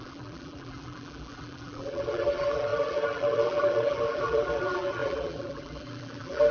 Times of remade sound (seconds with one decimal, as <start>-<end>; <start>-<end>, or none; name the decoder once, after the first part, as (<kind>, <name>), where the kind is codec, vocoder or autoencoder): 0.0-6.5 (vocoder, BigVGAN v2)